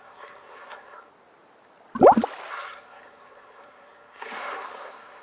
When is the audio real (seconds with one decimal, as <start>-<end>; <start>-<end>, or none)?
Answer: 1.1-2.5